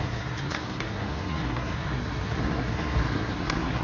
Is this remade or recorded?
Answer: remade